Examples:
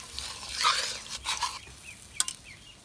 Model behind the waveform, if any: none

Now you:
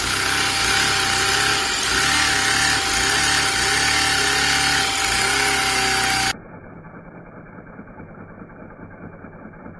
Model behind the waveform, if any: none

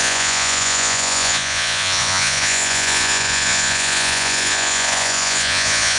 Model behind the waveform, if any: vocoder, Vocos